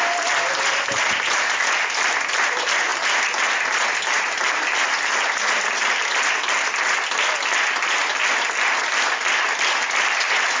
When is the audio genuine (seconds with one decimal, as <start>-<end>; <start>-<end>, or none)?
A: 0.0-10.6